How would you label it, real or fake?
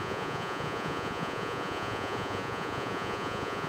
fake